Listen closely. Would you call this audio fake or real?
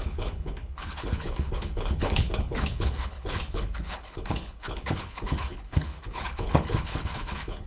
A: fake